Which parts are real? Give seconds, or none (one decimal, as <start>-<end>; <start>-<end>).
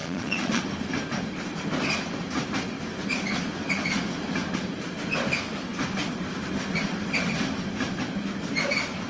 0.6-9.1